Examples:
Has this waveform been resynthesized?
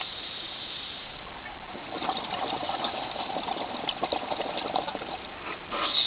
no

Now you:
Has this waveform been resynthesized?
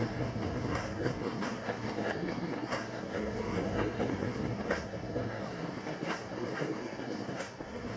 yes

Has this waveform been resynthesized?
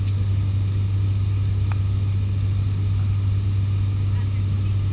no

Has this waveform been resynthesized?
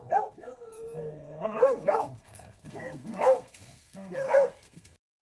yes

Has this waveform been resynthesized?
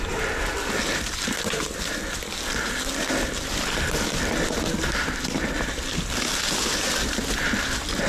no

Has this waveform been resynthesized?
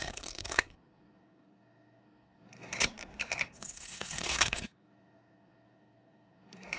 yes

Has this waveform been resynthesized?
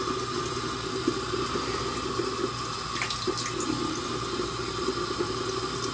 no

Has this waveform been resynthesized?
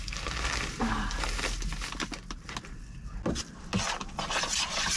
no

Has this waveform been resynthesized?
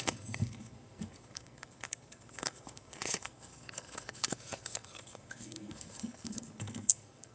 yes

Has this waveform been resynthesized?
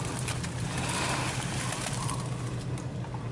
no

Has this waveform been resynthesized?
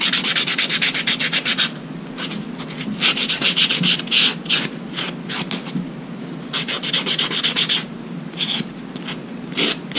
no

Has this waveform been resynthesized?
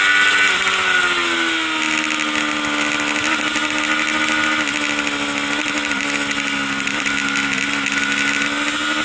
no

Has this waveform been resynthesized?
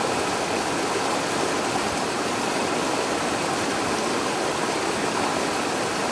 no